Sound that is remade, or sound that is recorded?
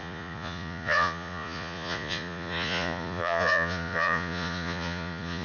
remade